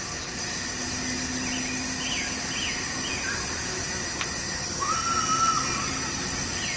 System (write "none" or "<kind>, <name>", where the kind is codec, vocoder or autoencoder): none